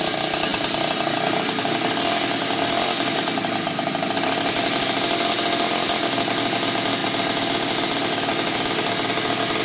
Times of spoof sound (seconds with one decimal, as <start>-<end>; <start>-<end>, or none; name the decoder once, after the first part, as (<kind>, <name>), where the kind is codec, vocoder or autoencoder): 0.5-4.8 (vocoder, BigVGAN v2); 7.0-9.6